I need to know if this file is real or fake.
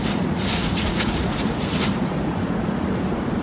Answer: fake